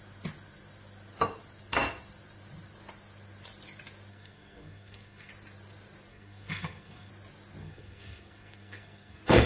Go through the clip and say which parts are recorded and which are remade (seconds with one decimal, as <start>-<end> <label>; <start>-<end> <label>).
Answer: 0.0-4.1 recorded; 4.1-5.3 remade; 5.3-6.1 recorded; 6.1-7.1 remade; 7.1-7.6 recorded; 7.6-9.5 remade